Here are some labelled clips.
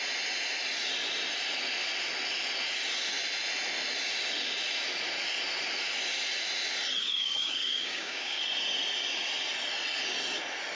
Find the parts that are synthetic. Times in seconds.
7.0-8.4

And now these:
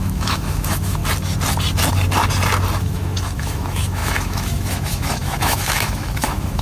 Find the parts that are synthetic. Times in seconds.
0.0-1.0; 2.8-6.6

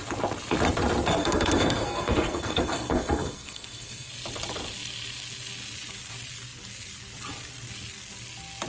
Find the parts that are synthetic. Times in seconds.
1.2-4.1

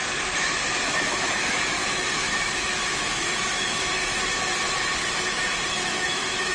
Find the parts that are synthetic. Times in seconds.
0.0-4.0; 5.7-6.5

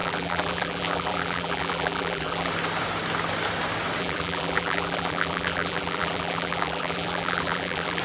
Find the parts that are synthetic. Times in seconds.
0.0-2.5; 4.0-8.0

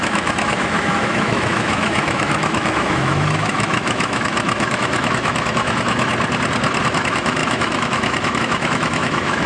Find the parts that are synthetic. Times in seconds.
0.0-6.1; 6.9-9.5